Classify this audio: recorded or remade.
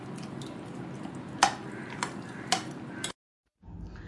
recorded